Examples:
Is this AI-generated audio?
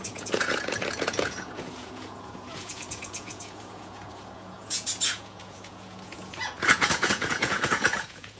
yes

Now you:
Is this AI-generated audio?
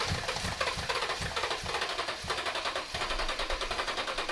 no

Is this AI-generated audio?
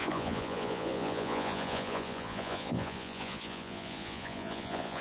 yes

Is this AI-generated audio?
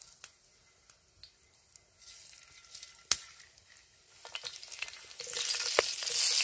no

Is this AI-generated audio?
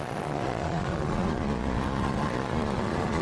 yes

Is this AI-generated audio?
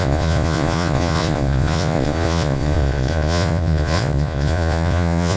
yes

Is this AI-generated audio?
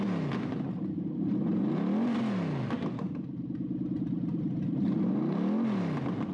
no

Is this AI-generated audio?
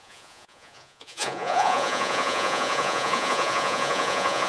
yes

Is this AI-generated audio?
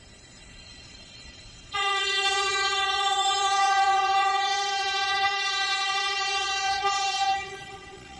yes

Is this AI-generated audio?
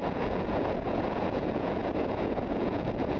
yes